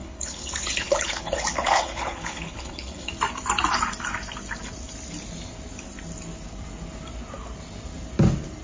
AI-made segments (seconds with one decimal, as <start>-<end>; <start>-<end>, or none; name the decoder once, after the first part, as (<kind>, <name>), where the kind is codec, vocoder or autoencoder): 0.0-3.1 (codec, HILCodec)